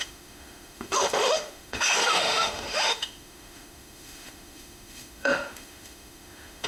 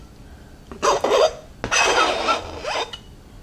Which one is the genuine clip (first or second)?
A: second